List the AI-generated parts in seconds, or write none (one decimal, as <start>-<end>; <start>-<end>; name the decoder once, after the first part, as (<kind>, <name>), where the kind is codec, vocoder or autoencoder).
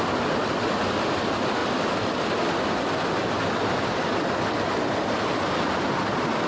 none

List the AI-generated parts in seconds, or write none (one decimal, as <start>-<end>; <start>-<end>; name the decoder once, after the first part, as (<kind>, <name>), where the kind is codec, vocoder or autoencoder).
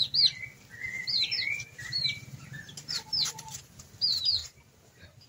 1.0-2.6 (vocoder, BigVGAN v2); 4.4-5.3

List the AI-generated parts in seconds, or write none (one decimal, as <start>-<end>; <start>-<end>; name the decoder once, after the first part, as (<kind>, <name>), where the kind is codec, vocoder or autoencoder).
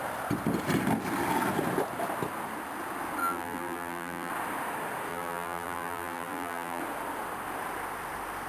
3.2-4.3 (vocoder, BigVGAN v2); 5.1-6.8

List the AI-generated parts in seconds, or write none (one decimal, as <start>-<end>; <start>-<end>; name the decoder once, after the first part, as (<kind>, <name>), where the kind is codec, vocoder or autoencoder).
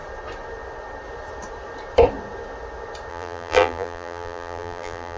3.1-5.2 (vocoder, BigVGAN v2)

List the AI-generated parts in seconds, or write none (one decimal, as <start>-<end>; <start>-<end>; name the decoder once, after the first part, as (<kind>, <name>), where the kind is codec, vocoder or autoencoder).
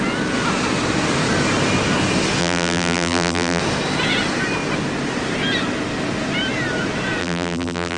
2.4-3.6 (vocoder, BigVGAN v2); 7.2-8.0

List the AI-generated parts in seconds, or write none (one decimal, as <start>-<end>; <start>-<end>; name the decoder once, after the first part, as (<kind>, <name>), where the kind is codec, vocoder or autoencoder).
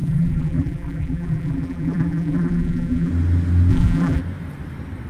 0.0-3.1 (vocoder, BigVGAN v2); 3.7-4.2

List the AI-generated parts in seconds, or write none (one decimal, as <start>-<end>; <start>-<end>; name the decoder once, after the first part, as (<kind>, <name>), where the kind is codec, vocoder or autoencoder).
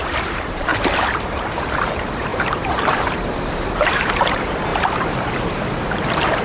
0.0-0.7 (vocoder, BigVGAN v2); 1.7-6.4